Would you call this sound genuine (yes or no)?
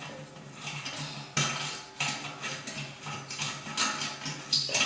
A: yes